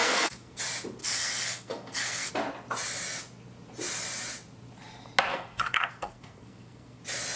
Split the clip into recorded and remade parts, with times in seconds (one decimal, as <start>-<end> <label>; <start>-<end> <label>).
0.0-0.6 remade; 0.6-1.0 recorded; 1.0-2.3 remade; 2.3-5.3 recorded; 5.3-7.0 remade; 7.0-7.4 recorded